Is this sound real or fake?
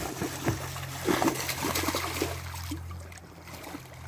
real